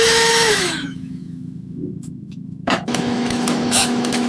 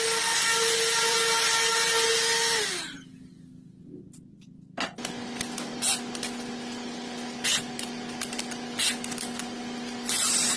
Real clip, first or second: second